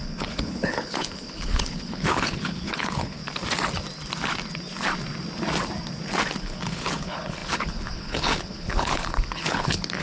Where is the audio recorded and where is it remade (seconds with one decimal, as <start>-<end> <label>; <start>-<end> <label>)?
0.0-3.2 remade; 3.2-6.4 recorded; 6.4-10.0 remade